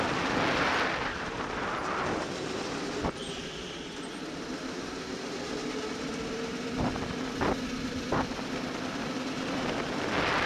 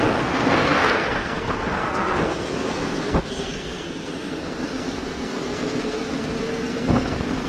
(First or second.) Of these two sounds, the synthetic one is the second